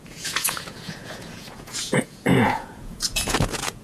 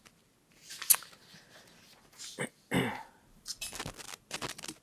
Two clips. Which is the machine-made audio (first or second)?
first